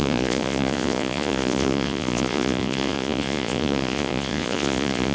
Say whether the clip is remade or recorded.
remade